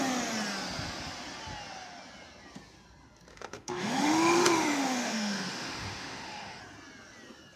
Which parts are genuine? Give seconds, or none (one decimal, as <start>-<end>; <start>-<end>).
0.0-3.3; 6.6-7.6